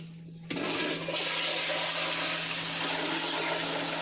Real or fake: real